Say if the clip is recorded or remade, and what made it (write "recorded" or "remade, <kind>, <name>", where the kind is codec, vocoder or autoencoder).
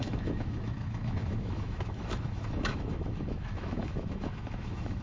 remade, autoencoder, DAC-VAE